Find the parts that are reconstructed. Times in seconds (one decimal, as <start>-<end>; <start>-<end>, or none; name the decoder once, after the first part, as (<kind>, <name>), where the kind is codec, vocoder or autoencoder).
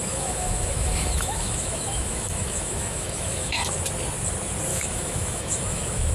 0.0-3.7 (autoencoder, DAC-VAE); 4.7-6.1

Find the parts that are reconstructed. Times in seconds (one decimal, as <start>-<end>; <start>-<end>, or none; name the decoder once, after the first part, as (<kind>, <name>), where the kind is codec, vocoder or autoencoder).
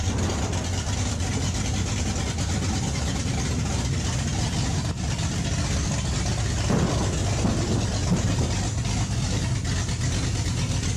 none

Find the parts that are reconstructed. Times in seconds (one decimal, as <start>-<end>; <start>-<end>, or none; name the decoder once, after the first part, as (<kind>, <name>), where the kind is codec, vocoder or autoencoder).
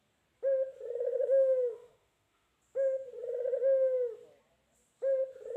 1.1-2.5 (autoencoder, DAC-VAE)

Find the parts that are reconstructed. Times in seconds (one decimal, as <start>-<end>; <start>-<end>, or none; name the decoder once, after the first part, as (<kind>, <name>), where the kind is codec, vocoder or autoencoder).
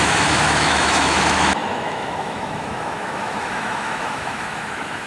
0.0-5.1 (autoencoder, DAC-VAE)